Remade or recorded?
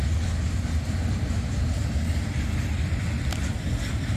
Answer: recorded